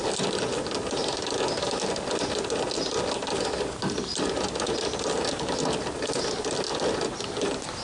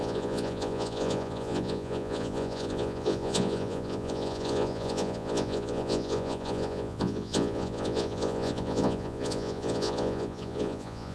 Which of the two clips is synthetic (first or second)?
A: second